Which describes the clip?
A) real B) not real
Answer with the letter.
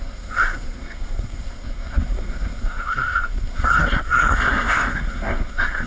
B